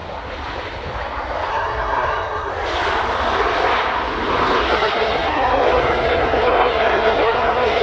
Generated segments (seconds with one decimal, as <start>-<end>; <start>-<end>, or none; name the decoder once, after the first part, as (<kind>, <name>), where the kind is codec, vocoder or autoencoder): 1.5-2.5 (codec, SNAC); 4.7-7.8